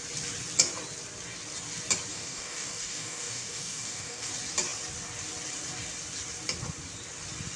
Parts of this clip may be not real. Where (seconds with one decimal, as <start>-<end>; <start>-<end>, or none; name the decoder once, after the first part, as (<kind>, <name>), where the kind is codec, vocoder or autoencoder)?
2.1-4.3 (codec, DAC)